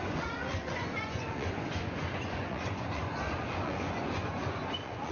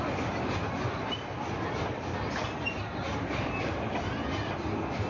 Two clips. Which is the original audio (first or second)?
second